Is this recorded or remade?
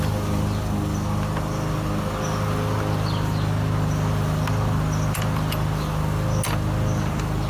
recorded